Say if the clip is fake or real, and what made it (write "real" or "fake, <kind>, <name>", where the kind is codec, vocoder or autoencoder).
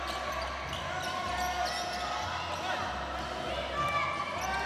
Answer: real